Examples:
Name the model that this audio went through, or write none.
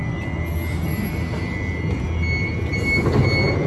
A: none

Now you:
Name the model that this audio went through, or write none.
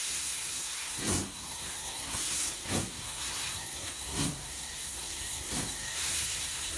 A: codec, SNAC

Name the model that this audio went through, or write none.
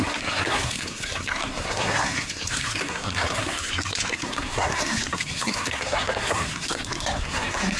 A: codec, SNAC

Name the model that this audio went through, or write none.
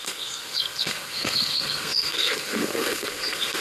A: codec, SNAC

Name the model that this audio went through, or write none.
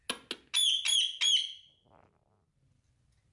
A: none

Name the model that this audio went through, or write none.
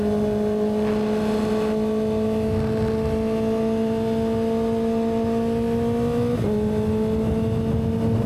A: none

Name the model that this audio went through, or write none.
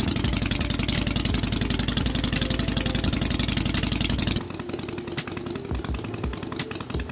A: none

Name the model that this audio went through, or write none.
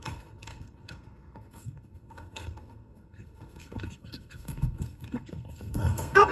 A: codec, SNAC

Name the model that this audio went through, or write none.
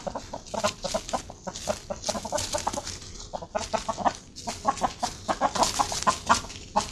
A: none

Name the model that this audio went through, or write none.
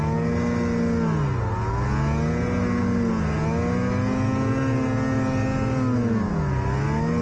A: none